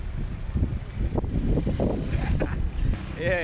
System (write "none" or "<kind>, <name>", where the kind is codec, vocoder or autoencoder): none